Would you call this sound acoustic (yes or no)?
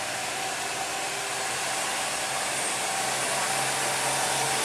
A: yes